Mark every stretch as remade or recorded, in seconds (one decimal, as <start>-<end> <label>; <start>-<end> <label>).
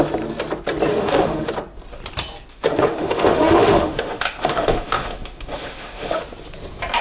0.0-0.9 recorded; 0.9-1.5 remade; 1.5-2.5 recorded; 2.5-6.2 remade; 6.2-7.0 recorded